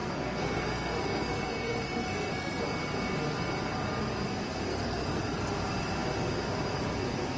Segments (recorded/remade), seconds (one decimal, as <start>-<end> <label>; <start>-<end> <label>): 0.0-2.6 remade; 2.6-4.7 recorded; 4.7-5.2 remade; 5.2-7.4 recorded